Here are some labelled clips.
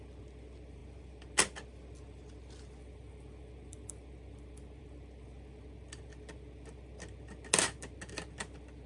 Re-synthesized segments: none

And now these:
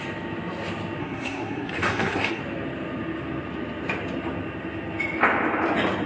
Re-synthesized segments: 1.0-2.4 (codec, SNAC)

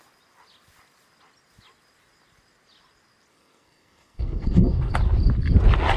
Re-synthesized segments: 3.3-4.9 (codec, SNAC)

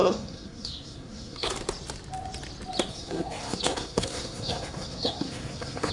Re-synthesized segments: 0.0-1.5 (codec, SNAC); 2.9-5.9

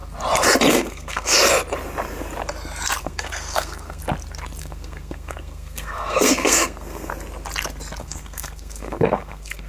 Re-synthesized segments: 0.7-1.4 (codec, SNAC); 3.0-4.0; 4.6-7.1; 8.0-9.7

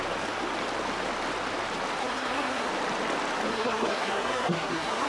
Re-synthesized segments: 2.0-2.7 (codec, SNAC); 3.5-5.1

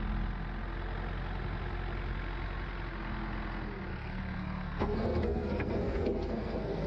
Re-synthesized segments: 3.9-6.9 (codec, SNAC)